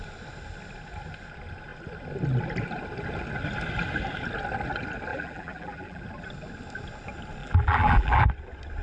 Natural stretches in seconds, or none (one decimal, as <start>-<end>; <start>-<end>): 0.0-5.1; 6.0-7.4; 8.3-8.8